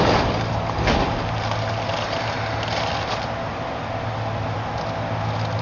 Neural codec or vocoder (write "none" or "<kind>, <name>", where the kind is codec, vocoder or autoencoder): none